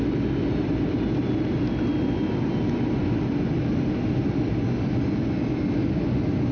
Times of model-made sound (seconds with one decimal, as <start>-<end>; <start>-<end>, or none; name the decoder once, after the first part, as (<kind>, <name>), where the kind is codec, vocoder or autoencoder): none